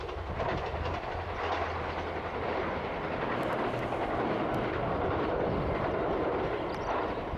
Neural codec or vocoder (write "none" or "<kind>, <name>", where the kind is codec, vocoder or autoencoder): none